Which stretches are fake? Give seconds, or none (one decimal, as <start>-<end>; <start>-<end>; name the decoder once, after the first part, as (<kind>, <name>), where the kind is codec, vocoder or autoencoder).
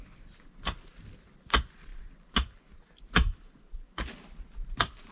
none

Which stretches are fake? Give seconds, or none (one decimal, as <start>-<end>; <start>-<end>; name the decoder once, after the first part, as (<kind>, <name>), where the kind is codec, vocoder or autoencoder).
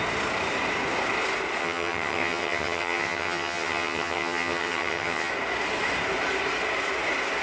1.6-5.3 (vocoder, HiFi-GAN)